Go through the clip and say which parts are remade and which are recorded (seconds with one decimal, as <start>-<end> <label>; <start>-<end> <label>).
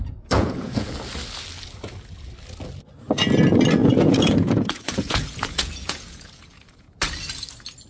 0.0-0.9 remade; 0.9-3.8 recorded; 3.8-7.0 remade; 7.0-7.9 recorded